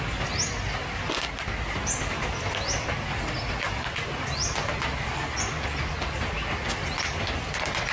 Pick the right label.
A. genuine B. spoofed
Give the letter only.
A